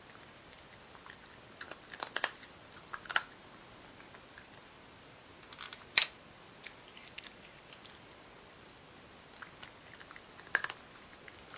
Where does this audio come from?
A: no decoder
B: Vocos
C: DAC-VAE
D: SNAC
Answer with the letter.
A